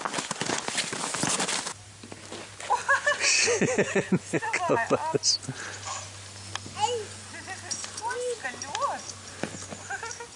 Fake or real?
real